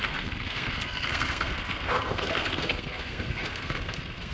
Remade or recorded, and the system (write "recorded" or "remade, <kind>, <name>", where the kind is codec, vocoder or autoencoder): remade, codec, SNAC